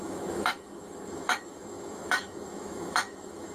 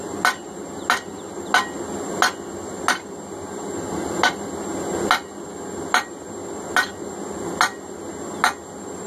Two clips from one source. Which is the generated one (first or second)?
first